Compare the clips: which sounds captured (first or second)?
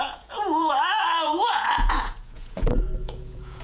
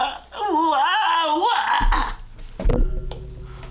second